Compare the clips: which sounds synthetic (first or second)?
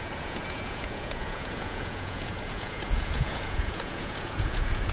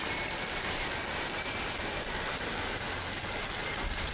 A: first